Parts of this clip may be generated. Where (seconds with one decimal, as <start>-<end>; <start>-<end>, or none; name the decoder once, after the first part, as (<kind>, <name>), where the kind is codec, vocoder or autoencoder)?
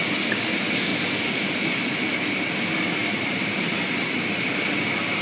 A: 3.0-4.4 (vocoder, BigVGAN v2)